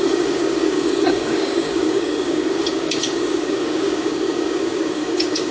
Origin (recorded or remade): remade